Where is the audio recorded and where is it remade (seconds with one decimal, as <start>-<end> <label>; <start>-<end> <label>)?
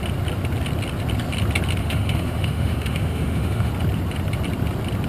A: 0.0-1.8 recorded; 1.8-3.7 remade; 3.7-5.1 recorded